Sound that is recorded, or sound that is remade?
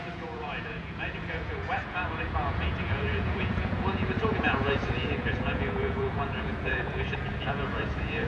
remade